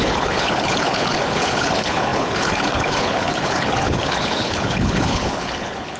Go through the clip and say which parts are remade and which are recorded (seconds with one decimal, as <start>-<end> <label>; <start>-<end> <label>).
0.0-6.0 remade

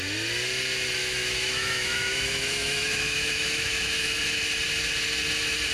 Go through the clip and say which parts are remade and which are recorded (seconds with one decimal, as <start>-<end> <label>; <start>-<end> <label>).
0.0-1.0 recorded; 1.0-4.4 remade; 4.4-5.7 recorded

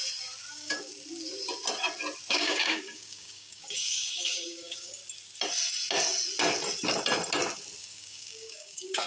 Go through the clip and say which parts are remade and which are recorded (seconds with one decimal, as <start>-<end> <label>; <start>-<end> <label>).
0.0-0.5 recorded; 0.5-0.9 remade; 0.9-2.3 recorded; 2.3-5.0 remade; 5.0-7.8 recorded; 7.8-9.1 remade